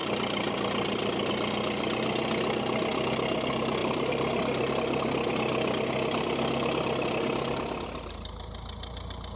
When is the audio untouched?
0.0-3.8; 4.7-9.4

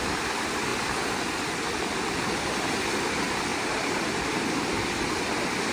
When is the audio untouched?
0.0-3.5; 4.6-5.7

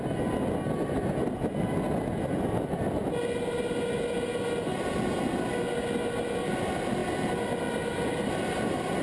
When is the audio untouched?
0.0-9.0